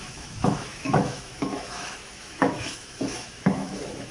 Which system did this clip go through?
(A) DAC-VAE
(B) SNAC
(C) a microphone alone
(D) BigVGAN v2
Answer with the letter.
A